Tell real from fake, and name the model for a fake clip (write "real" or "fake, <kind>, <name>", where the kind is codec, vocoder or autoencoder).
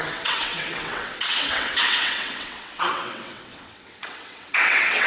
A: fake, vocoder, WaveNeXt